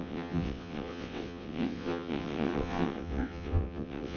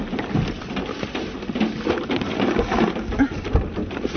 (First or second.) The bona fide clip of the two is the second